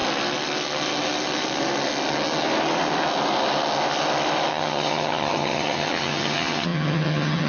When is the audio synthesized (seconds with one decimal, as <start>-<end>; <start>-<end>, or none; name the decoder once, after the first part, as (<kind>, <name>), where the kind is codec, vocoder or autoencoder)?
4.5-7.5 (vocoder, HiFi-GAN)

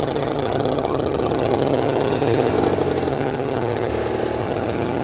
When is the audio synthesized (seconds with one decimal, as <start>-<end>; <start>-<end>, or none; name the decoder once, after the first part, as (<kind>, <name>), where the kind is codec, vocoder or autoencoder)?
0.0-2.5 (vocoder, HiFi-GAN); 3.1-3.9; 4.4-5.0

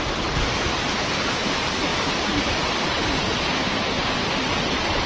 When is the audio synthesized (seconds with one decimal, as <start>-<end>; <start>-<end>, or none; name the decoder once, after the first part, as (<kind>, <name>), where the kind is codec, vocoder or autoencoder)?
none

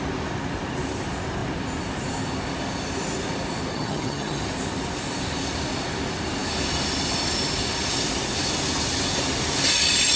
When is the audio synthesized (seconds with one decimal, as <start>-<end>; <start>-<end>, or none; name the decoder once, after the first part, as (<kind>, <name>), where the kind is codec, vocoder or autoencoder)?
3.7-4.4 (vocoder, HiFi-GAN)

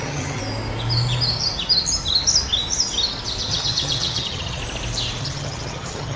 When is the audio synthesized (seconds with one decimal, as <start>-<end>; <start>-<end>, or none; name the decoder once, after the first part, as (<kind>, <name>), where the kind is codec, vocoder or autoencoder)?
0.0-0.4 (vocoder, HiFi-GAN); 3.5-4.6; 5.2-6.2